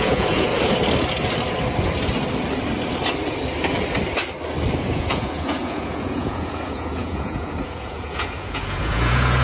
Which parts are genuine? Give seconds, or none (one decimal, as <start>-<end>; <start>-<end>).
0.5-4.8